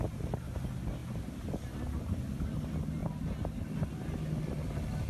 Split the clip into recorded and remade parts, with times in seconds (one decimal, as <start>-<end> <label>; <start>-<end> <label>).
0.0-5.1 recorded